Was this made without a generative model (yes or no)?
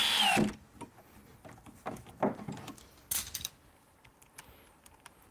yes